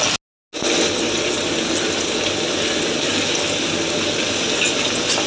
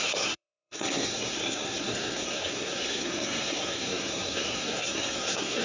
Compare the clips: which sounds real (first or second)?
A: first